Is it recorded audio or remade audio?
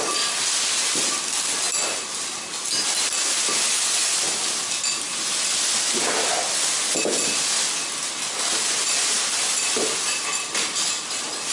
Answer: recorded